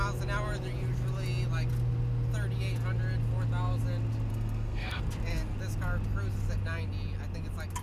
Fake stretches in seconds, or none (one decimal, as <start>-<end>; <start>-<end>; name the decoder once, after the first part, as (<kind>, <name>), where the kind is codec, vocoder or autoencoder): 4.3-5.0 (codec, SNAC)